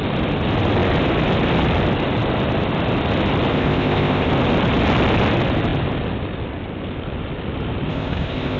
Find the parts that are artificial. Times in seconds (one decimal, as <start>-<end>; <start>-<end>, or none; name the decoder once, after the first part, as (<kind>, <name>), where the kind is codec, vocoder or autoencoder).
3.5-4.3 (codec, ZipCodec); 7.9-8.6